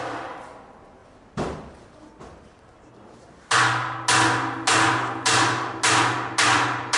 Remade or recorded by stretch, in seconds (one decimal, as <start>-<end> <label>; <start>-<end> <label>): 0.0-1.0 recorded; 1.0-3.4 remade; 3.4-7.0 recorded